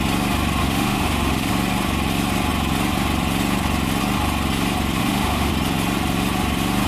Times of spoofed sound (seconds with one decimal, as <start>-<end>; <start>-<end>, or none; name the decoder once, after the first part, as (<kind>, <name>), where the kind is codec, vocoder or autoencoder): 0.6-1.5 (autoencoder, DAC-VAE); 5.0-5.5